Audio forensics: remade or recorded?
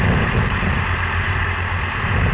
recorded